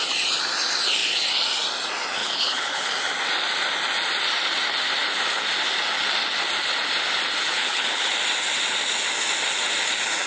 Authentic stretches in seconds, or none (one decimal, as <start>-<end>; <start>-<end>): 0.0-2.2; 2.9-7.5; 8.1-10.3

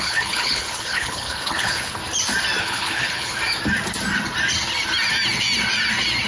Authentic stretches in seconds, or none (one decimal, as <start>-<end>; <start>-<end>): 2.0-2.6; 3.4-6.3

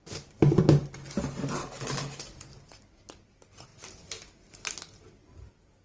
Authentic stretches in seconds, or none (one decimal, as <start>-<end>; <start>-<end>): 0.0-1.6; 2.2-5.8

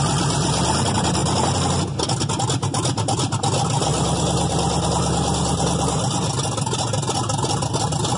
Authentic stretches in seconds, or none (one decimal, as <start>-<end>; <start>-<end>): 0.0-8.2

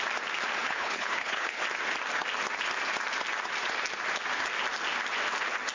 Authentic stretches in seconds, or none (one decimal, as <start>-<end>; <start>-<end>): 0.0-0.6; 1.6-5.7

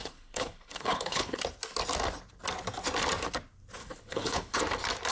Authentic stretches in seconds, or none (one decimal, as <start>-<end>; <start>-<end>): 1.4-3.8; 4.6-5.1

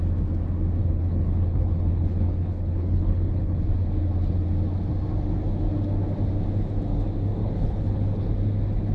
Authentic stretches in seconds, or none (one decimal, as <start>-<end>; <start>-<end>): 0.0-0.8; 3.6-7.4; 8.3-8.9

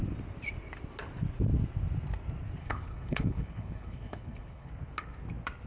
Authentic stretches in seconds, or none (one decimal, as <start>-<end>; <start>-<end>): 0.0-2.6; 4.7-5.7